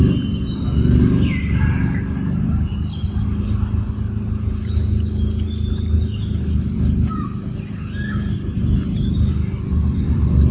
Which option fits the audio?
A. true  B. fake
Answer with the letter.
A